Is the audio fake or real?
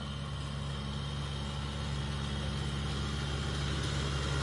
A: real